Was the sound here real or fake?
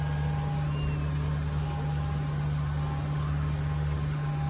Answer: real